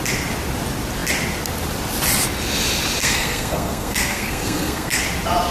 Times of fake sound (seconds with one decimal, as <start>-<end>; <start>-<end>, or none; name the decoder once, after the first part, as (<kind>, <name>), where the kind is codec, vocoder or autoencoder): 3.0-5.0 (codec, SNAC)

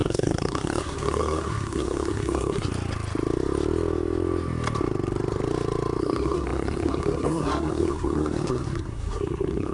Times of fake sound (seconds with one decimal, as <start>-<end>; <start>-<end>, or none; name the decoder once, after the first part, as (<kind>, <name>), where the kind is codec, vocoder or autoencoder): 0.0-2.7 (codec, SNAC); 6.0-9.7

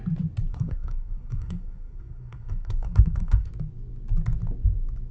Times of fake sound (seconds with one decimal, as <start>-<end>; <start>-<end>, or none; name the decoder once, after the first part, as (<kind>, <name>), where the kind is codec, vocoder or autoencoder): 0.5-3.5 (codec, SNAC)